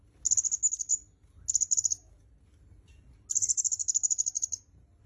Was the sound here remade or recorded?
recorded